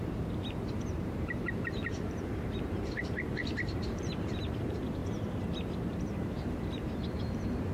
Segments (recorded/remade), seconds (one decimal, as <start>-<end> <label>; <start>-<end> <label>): 0.0-5.0 remade; 5.0-6.0 recorded; 6.0-7.7 remade